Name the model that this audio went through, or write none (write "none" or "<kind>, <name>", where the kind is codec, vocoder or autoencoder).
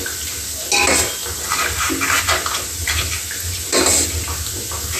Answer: none